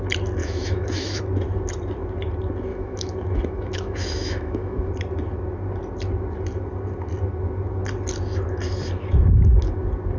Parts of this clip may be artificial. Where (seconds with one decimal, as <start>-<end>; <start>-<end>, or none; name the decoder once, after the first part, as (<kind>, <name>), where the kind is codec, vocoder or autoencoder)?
0.4-1.2 (autoencoder, DAC-VAE); 2.7-4.9